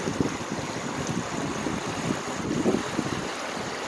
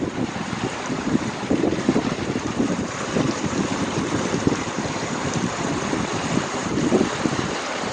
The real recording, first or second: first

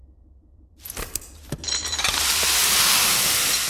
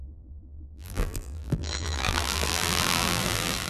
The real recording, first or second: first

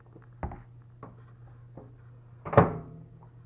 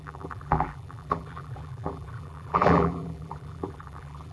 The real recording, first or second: first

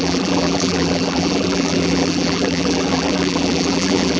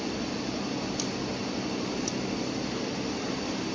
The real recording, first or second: second